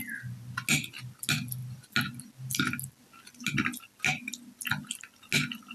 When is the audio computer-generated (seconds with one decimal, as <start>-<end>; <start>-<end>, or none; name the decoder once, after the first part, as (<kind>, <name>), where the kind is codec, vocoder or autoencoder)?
none